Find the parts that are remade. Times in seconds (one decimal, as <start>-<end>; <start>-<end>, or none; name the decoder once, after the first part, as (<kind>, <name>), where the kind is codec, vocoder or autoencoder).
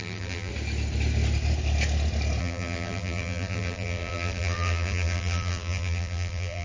0.0-0.5 (vocoder, BigVGAN v2); 2.4-6.6